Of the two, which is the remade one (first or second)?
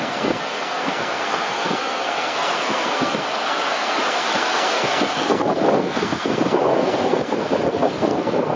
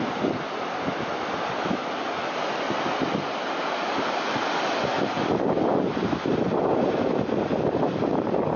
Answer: first